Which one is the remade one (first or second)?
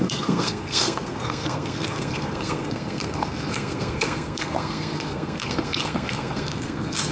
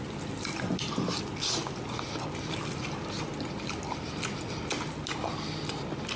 first